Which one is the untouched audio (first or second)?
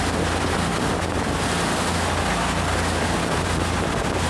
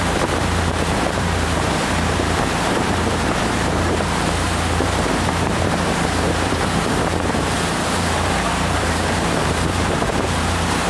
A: first